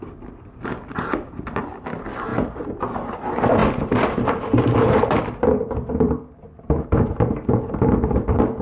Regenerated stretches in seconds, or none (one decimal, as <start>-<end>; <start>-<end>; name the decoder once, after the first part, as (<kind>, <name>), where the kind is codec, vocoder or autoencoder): none